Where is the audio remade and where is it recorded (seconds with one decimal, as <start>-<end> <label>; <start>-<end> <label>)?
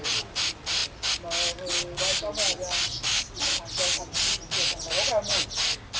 0.0-6.0 recorded